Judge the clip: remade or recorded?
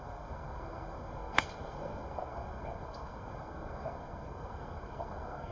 remade